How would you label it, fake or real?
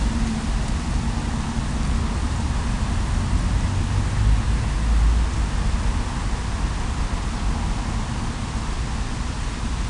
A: real